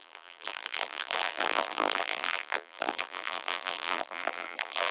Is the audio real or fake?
fake